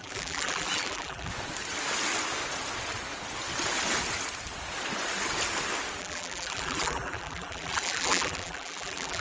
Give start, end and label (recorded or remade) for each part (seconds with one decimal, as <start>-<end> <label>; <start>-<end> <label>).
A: 0.0-1.3 remade; 1.3-6.0 recorded; 6.0-9.2 remade